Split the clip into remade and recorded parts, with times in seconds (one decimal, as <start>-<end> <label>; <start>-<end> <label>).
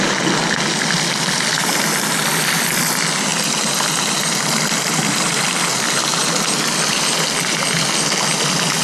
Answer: 0.0-3.3 recorded; 3.3-7.6 remade; 7.6-8.8 recorded